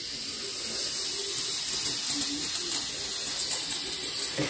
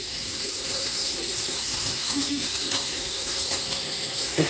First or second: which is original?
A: first